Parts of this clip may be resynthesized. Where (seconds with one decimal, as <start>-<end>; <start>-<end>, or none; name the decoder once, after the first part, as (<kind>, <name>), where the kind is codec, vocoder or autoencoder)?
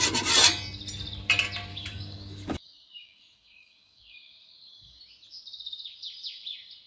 1.7-5.0 (codec, DAC)